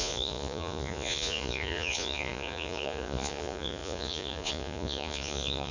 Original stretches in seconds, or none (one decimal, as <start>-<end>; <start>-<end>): none